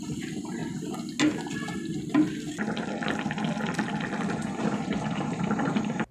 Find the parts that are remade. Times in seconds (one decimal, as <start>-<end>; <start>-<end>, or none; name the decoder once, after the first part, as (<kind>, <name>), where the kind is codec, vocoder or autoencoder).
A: 0.0-0.6 (vocoder, BigVGAN v2); 4.3-6.1

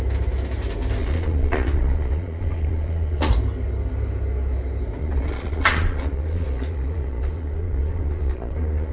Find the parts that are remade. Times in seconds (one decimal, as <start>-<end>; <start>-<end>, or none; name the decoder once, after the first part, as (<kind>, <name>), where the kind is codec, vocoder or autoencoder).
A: 1.0-3.3 (vocoder, Vocos); 5.0-8.9

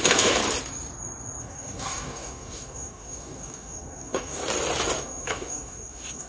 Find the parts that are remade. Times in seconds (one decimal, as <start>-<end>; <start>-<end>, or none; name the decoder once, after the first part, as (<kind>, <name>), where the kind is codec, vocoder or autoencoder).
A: 0.0-0.4 (codec, DAC); 1.4-4.4; 5.0-6.3

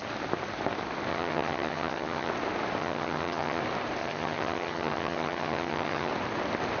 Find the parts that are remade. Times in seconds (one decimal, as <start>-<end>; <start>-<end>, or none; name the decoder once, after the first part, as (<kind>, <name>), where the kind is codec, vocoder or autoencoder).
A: 1.1-2.3 (vocoder, HiFi-GAN); 2.8-3.6; 4.0-6.1

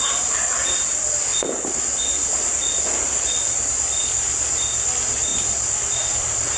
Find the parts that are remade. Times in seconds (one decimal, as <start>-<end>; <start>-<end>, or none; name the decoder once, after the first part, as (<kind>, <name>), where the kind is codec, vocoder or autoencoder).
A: none

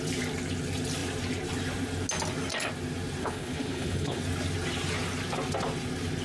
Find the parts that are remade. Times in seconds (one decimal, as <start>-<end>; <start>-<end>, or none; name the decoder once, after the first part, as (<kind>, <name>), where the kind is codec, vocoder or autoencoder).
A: 3.2-4.2 (codec, HILCodec)

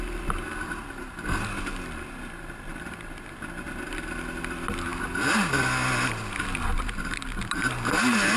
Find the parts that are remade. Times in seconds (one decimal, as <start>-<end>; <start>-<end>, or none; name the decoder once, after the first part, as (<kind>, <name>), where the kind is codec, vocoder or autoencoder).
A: none

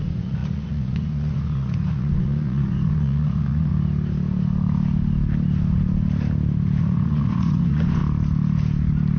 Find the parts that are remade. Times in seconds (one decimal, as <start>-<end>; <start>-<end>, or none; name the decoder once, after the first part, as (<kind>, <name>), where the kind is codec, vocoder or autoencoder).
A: 0.0-3.7 (vocoder, Vocos); 6.8-8.0